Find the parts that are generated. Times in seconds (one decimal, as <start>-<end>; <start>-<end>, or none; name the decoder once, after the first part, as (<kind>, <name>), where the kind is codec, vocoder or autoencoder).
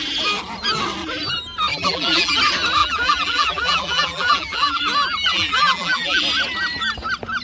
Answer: 1.7-2.4 (vocoder, BigVGAN v2); 2.8-4.8; 5.3-6.2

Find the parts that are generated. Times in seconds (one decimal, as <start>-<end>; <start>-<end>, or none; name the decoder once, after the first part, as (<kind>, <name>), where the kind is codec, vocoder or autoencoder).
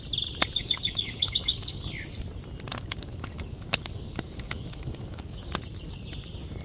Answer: 0.6-1.9 (codec, DAC); 2.7-5.5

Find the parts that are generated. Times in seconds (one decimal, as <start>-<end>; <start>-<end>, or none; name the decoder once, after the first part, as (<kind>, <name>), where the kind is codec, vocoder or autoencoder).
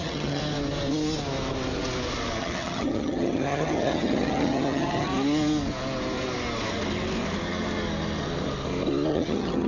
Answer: 0.0-0.4 (vocoder, HiFi-GAN); 2.4-5.1; 9.1-9.7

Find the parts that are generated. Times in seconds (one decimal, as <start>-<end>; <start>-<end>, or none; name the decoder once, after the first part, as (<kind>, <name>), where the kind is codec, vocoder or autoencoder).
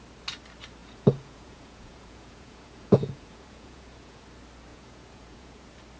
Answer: 0.8-4.2 (vocoder, Vocos); 4.7-5.6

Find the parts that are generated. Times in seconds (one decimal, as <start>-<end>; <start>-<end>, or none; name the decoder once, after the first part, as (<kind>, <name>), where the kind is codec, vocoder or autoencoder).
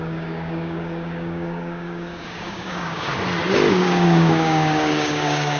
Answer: 0.0-3.1 (codec, DAC); 3.7-5.6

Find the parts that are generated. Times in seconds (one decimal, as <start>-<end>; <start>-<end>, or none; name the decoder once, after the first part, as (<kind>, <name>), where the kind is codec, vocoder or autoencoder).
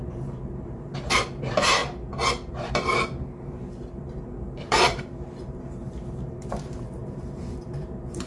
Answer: 0.0-1.8 (vocoder, BigVGAN v2); 2.5-8.3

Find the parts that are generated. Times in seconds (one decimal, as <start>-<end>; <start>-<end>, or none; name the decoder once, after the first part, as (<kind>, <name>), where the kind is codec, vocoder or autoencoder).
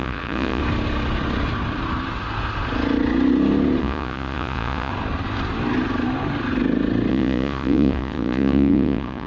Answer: 0.0-0.6 (vocoder, Vocos); 3.8-4.9; 7.1-9.3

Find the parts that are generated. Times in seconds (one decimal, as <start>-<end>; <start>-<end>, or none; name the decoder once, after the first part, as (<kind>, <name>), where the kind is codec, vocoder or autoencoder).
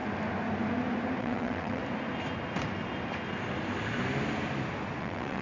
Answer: 1.2-1.8 (vocoder, WaveNeXt); 5.0-5.4